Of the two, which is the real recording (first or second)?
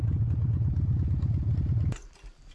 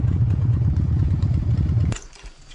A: first